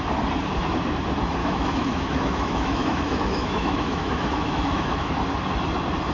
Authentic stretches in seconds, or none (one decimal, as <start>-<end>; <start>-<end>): 0.0-1.4; 5.1-6.1